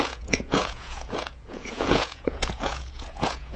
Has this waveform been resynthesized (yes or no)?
yes